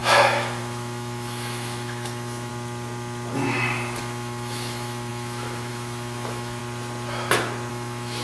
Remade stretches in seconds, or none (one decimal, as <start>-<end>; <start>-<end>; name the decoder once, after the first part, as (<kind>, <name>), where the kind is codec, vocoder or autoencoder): 0.0-2.5 (autoencoder, DAC-VAE); 4.0-6.6; 7.7-8.2